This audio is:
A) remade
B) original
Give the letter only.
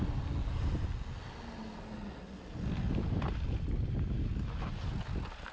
B